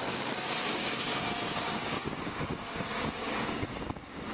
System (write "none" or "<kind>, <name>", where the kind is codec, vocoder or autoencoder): codec, DAC